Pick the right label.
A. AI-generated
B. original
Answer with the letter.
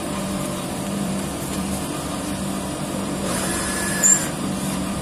A